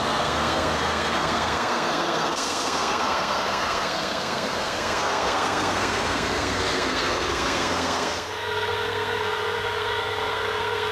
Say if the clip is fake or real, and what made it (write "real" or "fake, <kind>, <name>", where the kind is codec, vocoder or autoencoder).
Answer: fake, codec, SNAC